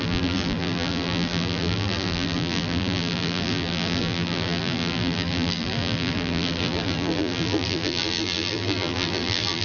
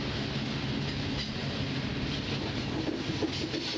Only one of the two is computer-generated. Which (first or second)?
first